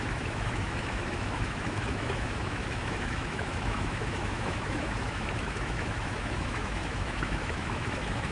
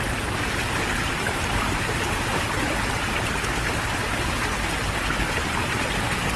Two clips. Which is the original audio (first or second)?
second